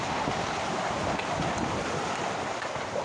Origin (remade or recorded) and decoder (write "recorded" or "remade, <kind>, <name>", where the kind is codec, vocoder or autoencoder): recorded